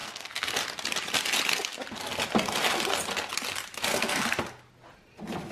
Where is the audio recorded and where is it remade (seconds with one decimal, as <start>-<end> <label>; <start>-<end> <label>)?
0.0-0.5 remade; 0.5-3.9 recorded; 3.9-4.4 remade; 4.4-5.5 recorded